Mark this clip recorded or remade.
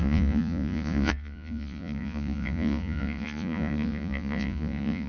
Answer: remade